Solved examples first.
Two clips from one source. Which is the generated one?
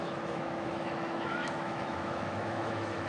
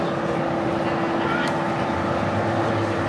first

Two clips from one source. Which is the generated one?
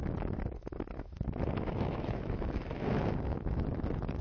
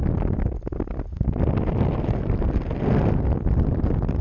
first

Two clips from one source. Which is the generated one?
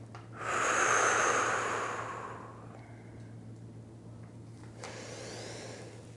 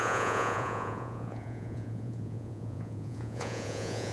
second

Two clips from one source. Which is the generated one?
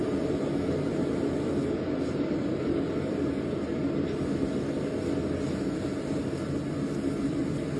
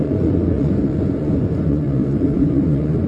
second